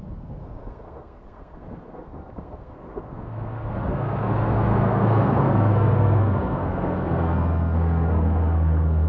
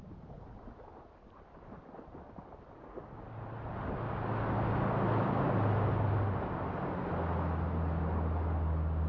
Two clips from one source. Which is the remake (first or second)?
first